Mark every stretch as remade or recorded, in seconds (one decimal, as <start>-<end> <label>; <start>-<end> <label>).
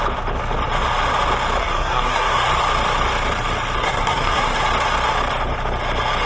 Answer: 0.0-1.6 recorded; 1.6-2.5 remade; 2.5-3.8 recorded; 3.8-4.6 remade; 4.6-6.3 recorded